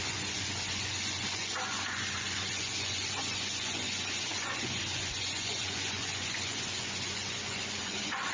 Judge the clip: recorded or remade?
remade